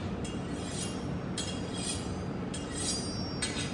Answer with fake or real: real